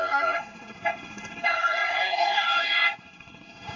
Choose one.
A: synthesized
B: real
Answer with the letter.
A